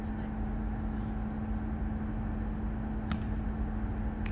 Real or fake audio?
real